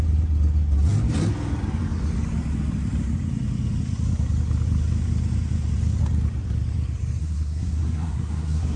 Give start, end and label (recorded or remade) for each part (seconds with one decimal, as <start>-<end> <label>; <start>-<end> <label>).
0.0-7.2 recorded; 7.2-8.8 remade